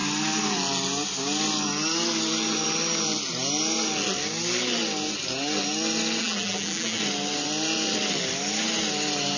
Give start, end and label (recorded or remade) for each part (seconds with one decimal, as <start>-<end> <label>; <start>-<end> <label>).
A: 0.0-6.2 recorded; 6.2-7.0 remade; 7.0-9.4 recorded